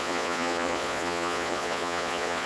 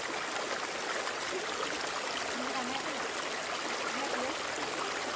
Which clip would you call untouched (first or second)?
second